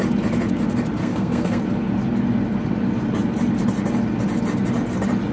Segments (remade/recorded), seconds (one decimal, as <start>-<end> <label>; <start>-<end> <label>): 0.0-1.0 recorded; 1.0-1.6 remade; 1.6-5.3 recorded